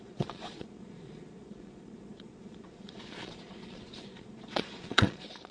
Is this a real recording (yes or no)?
no